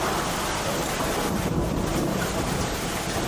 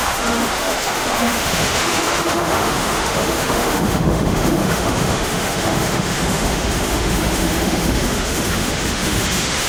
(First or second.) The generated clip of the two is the second